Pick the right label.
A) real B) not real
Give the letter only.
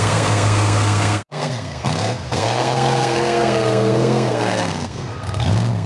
B